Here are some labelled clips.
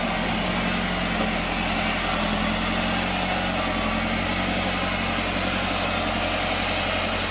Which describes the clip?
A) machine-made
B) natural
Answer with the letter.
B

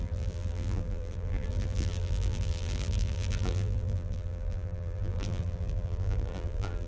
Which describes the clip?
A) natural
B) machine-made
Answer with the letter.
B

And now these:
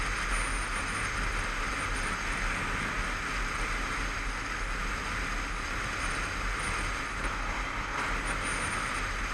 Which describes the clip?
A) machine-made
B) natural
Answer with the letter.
B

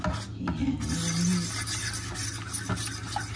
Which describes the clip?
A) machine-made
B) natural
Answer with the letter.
B